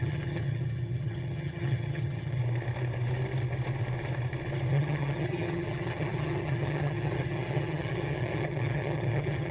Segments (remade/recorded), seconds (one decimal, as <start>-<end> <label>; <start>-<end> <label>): 0.0-2.4 remade; 2.4-4.7 recorded; 4.7-9.5 remade